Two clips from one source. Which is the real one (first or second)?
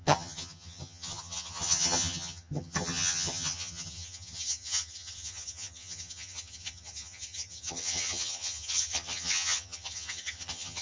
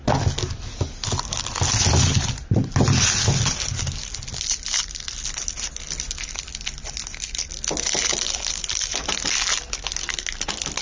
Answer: second